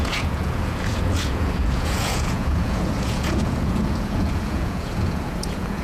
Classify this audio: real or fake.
fake